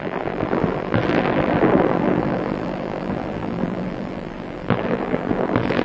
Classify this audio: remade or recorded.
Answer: remade